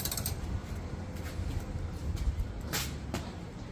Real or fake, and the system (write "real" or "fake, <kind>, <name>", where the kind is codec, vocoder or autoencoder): fake, vocoder, BigVGAN v2